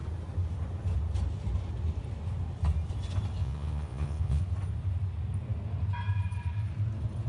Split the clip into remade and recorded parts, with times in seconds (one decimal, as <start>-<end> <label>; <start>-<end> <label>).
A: 0.0-3.4 recorded; 3.4-4.4 remade; 4.4-7.3 recorded